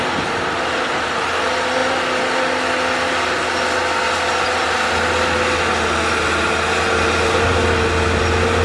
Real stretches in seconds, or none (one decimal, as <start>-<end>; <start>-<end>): 0.0-8.6